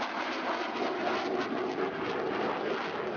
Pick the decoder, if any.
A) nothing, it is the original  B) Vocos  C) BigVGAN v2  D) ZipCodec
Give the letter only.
A